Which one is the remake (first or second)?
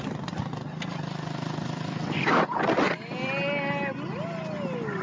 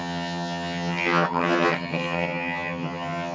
second